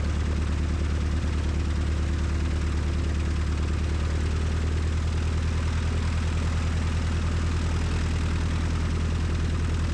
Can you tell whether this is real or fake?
real